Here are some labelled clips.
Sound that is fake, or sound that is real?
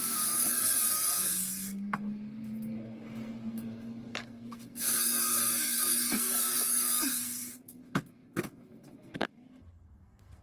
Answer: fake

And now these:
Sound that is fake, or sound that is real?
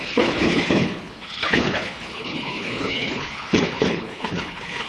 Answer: fake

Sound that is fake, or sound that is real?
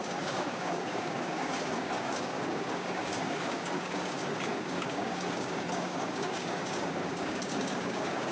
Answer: fake